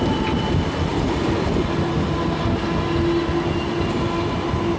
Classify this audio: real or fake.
real